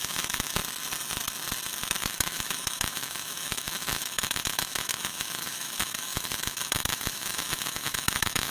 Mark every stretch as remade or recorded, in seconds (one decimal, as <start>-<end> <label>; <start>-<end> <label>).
0.0-0.6 remade; 0.6-1.8 recorded; 1.8-8.5 remade